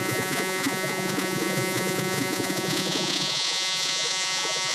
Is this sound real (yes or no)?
no